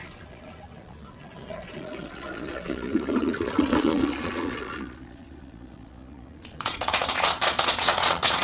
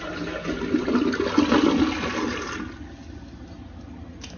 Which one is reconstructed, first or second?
first